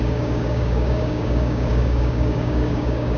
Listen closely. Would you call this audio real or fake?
fake